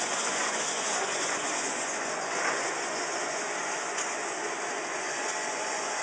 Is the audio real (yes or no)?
no